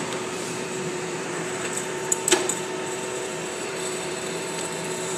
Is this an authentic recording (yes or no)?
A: no